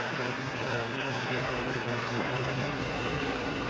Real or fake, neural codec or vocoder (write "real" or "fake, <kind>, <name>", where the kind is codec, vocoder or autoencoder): fake, codec, SNAC